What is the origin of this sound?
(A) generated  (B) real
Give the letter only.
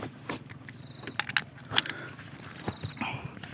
B